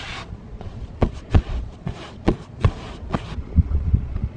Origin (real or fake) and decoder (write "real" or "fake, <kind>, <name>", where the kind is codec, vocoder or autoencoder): fake, vocoder, Vocos